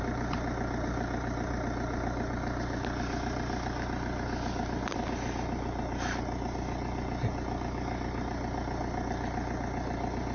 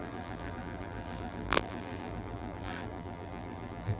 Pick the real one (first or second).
first